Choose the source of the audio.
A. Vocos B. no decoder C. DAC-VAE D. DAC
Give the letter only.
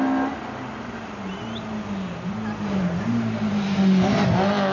B